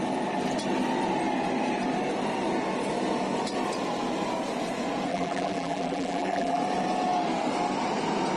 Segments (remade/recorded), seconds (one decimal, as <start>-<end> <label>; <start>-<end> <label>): 0.0-5.1 recorded; 5.1-6.6 remade; 6.6-8.4 recorded